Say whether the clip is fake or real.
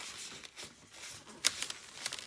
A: real